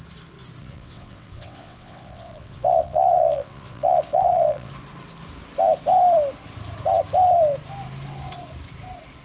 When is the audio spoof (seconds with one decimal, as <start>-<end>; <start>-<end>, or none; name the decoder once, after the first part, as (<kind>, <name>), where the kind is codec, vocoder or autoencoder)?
0.6-4.7 (vocoder, WaveNeXt)